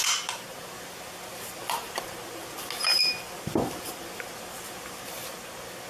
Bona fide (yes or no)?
yes